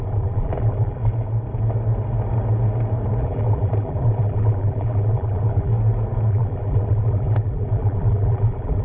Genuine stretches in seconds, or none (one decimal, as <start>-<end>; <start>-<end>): 1.0-3.2; 5.7-6.3